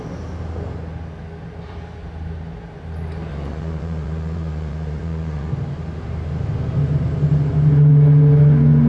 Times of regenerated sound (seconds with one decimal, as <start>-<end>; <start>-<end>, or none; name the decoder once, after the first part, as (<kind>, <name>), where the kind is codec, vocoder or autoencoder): 3.3-5.5 (vocoder, Vocos)